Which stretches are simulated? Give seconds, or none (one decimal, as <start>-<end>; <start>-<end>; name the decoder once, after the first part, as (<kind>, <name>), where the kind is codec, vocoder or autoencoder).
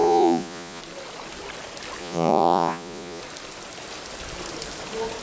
0.0-0.8 (vocoder, Vocos); 2.0-3.2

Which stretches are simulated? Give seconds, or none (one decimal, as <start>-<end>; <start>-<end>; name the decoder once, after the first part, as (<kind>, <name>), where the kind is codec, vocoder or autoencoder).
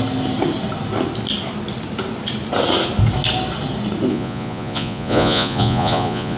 4.1-6.4 (vocoder, Vocos)